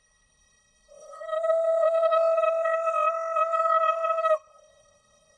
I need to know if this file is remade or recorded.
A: remade